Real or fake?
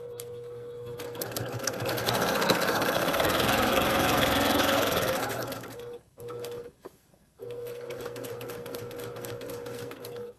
fake